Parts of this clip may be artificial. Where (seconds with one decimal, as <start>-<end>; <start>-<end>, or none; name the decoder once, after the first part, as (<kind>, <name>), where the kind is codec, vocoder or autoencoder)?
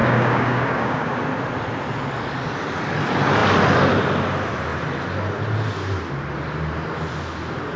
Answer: 0.0-1.2 (codec, DAC)